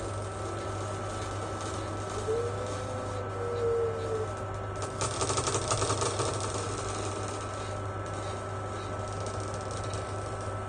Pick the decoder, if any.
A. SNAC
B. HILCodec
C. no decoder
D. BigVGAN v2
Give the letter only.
C